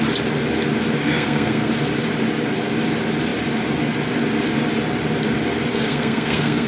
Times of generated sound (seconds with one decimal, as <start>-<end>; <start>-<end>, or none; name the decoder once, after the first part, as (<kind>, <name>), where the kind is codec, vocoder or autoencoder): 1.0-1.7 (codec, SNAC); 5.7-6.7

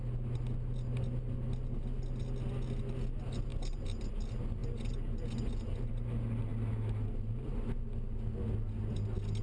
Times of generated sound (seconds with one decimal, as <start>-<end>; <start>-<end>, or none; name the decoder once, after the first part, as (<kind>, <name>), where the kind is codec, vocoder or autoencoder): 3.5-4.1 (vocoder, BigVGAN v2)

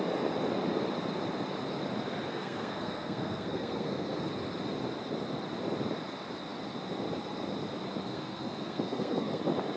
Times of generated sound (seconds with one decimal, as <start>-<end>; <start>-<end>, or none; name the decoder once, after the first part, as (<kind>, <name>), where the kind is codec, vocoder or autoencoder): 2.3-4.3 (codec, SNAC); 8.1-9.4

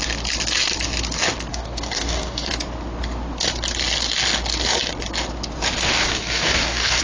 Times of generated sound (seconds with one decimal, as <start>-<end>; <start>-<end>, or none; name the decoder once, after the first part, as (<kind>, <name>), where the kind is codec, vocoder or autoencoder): 1.5-2.5 (codec, DAC); 5.9-7.0

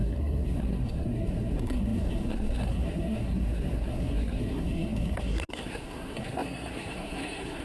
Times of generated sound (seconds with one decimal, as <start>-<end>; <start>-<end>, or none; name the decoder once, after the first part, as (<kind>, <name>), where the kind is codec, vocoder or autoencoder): 0.0-7.6 (codec, SNAC)

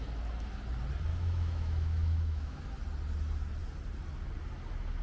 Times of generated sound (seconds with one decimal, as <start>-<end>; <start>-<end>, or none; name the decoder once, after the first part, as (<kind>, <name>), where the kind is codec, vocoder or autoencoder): 1.1-2.6 (autoencoder, DAC-VAE)

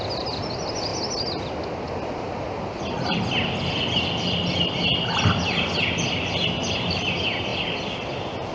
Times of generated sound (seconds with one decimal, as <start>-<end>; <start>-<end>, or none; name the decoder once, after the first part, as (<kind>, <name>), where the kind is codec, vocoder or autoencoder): none